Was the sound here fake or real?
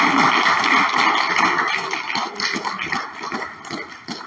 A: real